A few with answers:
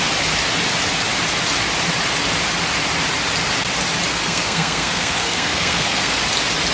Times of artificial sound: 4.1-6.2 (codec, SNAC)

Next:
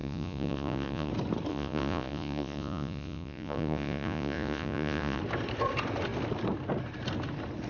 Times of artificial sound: 0.0-1.1 (vocoder, Vocos); 1.5-5.2

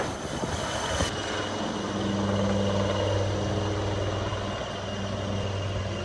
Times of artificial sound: none

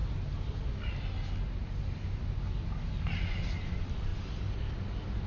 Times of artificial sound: none

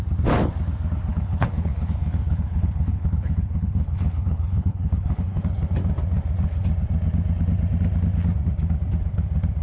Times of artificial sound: 1.1-5.4 (codec, HILCodec)

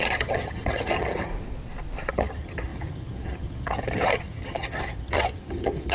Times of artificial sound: 0.0-1.3 (vocoder, HiFi-GAN); 2.1-5.9

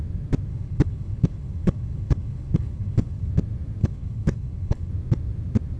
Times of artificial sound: 0.5-3.3 (codec, HILCodec); 3.8-4.9